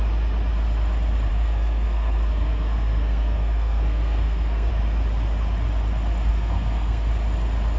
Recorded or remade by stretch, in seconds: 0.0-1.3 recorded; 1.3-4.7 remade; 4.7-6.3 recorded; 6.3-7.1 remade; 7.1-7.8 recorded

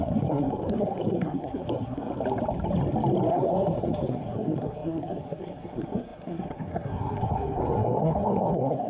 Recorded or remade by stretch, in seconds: 0.0-2.1 remade; 2.1-3.3 recorded; 3.3-8.9 remade

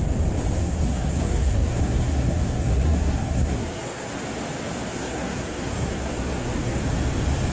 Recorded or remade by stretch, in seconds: 0.0-0.6 recorded; 0.6-4.1 remade; 4.1-4.9 recorded; 4.9-6.8 remade; 6.8-7.5 recorded

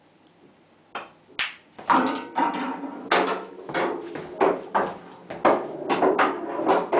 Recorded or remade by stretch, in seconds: 0.0-7.0 recorded

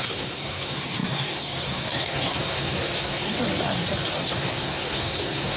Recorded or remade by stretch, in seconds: 0.0-3.4 remade; 3.4-4.1 recorded; 4.1-5.6 remade

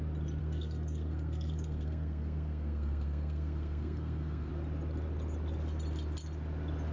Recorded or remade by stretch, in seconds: 0.0-0.4 recorded; 0.4-4.5 remade; 4.5-6.9 recorded

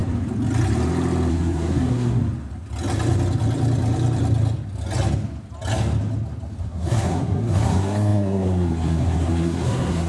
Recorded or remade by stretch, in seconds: 0.0-1.3 recorded; 1.3-2.2 remade; 2.2-6.6 recorded; 6.6-10.1 remade

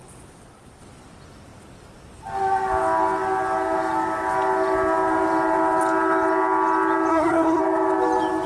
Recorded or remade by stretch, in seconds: 0.0-7.1 recorded; 7.1-7.6 remade; 7.6-8.5 recorded